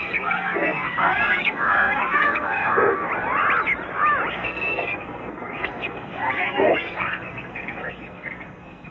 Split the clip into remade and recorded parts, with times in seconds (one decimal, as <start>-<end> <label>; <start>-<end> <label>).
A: 0.0-3.1 remade; 3.1-4.3 recorded; 4.3-8.9 remade